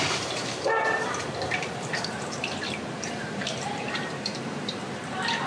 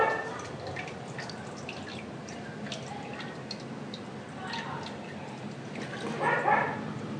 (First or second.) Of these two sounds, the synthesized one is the first